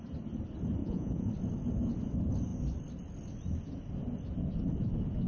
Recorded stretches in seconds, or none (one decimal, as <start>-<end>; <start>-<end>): 0.0-0.8; 1.3-5.3